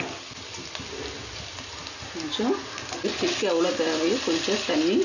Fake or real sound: real